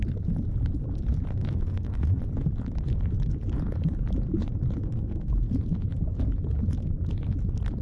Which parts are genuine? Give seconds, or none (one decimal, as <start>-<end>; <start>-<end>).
0.0-1.3; 2.2-4.8; 5.3-7.8

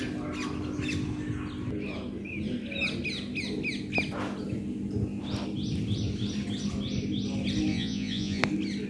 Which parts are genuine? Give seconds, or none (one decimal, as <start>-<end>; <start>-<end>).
0.0-7.7; 8.4-8.9

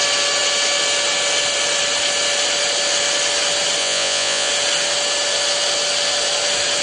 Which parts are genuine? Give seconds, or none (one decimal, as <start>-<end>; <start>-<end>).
0.0-3.8; 4.5-6.8